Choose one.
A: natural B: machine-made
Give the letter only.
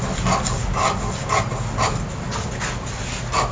A